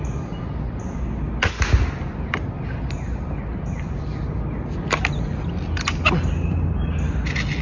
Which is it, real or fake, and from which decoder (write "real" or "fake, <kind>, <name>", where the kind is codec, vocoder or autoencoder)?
real